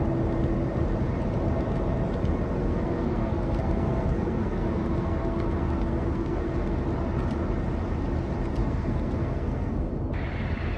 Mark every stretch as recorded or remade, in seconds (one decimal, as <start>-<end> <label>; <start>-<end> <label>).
0.0-2.6 recorded; 2.6-6.8 remade; 6.8-8.6 recorded; 8.6-9.9 remade; 9.9-10.8 recorded